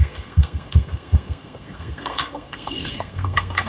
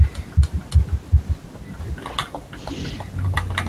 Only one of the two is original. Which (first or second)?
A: second